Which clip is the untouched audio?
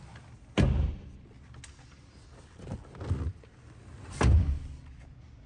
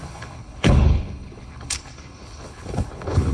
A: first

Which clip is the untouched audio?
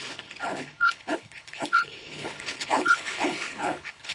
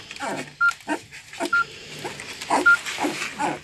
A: second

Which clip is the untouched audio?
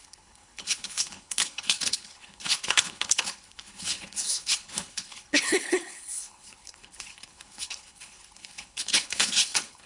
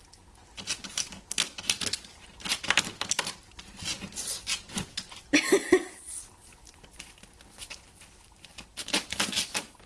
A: second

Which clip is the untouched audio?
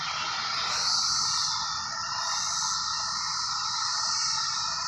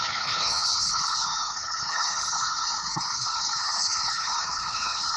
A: first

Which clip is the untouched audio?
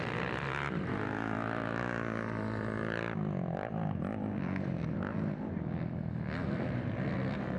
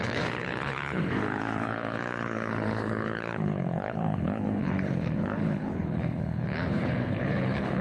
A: first